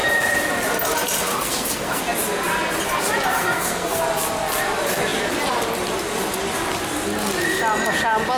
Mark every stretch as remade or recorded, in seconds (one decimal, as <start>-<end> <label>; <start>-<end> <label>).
0.0-1.3 recorded; 1.3-2.0 remade; 2.0-3.3 recorded; 3.3-4.0 remade; 4.0-8.4 recorded